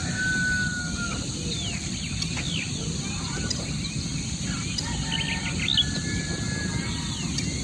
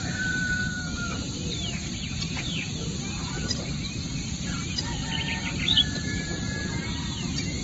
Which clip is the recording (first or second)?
first